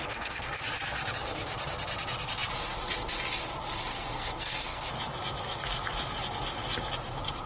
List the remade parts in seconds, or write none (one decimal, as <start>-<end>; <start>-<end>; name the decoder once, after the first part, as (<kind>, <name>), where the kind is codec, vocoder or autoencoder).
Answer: 0.0-0.6 (codec, SNAC); 3.9-4.8